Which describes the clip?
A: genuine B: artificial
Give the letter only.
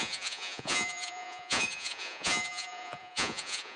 B